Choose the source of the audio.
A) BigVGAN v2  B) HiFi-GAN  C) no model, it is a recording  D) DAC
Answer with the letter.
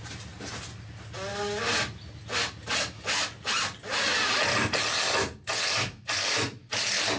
C